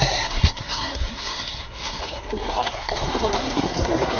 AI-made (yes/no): yes